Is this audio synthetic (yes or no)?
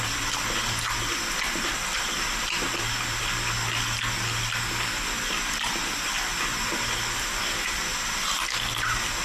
no